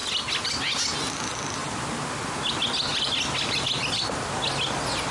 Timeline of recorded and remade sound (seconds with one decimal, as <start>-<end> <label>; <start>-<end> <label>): 0.0-5.1 recorded